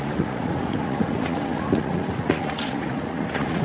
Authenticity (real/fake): fake